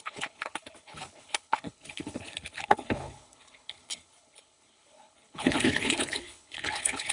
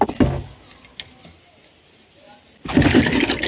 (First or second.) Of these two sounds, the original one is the second